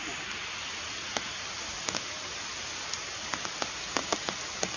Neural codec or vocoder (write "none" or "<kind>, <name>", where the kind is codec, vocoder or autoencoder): none